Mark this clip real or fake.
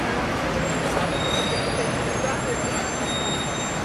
real